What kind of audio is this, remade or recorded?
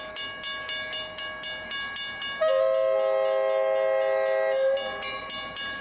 recorded